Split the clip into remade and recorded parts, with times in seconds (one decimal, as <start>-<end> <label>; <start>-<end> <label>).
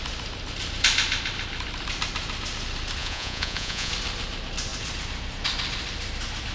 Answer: 0.0-3.0 recorded; 3.0-3.9 remade; 3.9-6.5 recorded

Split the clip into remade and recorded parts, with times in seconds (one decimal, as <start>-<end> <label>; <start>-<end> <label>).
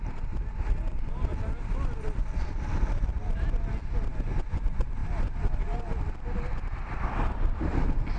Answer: 0.0-1.3 recorded; 1.3-2.2 remade; 2.2-4.1 recorded; 4.1-4.6 remade; 4.6-5.0 recorded; 5.0-6.8 remade; 6.8-8.2 recorded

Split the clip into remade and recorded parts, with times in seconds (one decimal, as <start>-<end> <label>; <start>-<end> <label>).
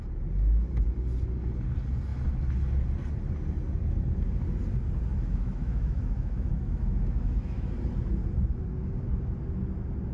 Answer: 0.0-5.1 recorded; 5.1-7.7 remade; 7.7-10.1 recorded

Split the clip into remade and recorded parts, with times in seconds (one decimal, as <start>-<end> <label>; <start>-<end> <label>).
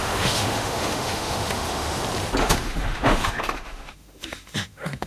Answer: 0.0-2.0 remade; 2.0-2.4 recorded; 2.4-5.1 remade